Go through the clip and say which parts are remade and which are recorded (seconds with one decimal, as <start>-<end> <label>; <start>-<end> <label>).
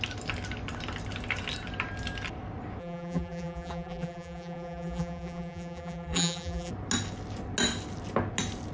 0.0-2.8 recorded; 2.8-6.7 remade; 6.7-8.7 recorded